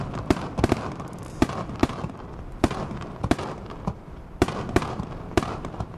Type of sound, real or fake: fake